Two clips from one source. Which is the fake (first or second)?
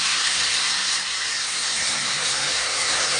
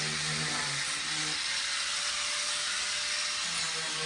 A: first